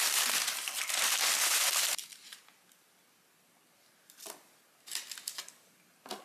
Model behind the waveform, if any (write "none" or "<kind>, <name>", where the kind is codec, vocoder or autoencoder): none